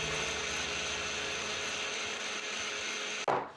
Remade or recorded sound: recorded